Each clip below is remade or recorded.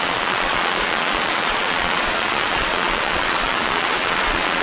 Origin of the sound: remade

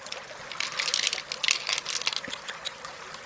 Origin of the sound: recorded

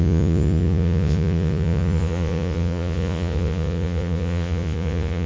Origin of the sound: remade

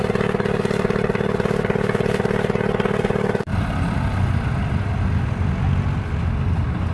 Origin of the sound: recorded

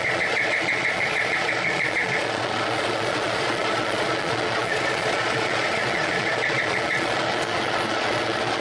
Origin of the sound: remade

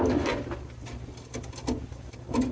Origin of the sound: recorded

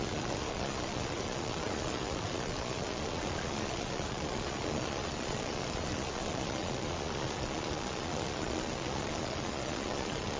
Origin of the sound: remade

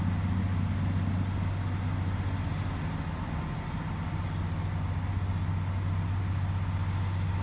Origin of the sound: recorded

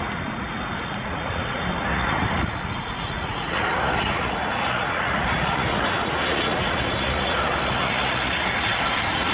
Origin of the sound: remade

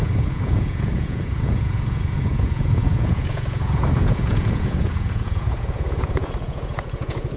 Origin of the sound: remade